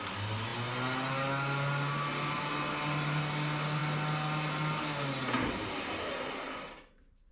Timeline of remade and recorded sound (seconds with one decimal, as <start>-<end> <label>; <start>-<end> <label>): 0.0-7.3 recorded